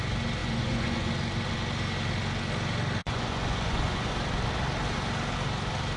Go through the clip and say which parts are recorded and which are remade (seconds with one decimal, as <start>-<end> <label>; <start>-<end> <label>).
0.0-0.4 recorded; 0.4-1.1 remade; 1.1-3.0 recorded; 3.0-4.1 remade; 4.1-6.0 recorded